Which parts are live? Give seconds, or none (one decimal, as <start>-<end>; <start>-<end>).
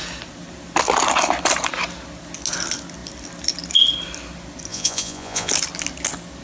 0.0-4.7; 5.5-6.4